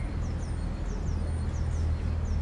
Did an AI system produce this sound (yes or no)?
no